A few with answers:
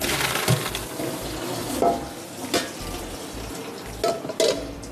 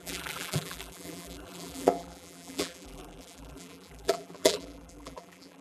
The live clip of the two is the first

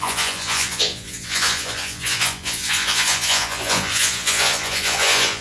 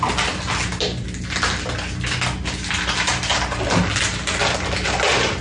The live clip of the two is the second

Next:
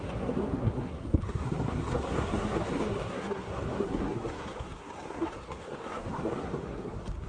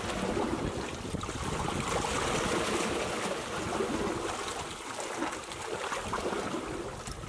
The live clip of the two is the second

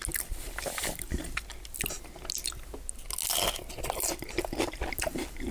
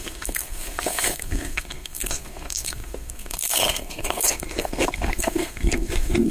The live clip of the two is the first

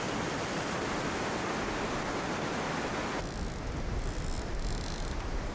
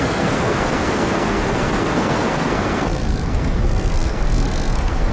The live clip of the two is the first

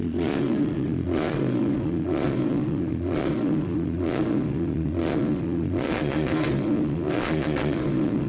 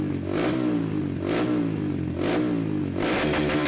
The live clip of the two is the second